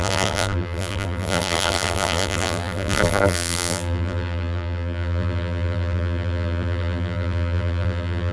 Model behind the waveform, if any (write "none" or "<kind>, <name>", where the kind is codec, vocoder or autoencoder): vocoder, BigVGAN v2